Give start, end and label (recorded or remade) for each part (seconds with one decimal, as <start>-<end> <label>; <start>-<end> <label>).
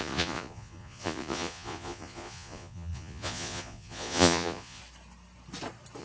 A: 0.0-4.8 remade; 4.8-6.0 recorded